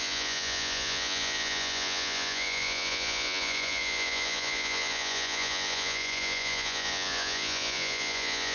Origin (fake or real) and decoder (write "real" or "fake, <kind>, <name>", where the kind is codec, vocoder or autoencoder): fake, vocoder, Vocos